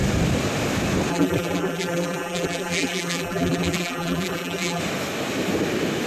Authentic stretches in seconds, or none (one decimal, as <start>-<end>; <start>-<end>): 0.0-1.1; 4.8-6.1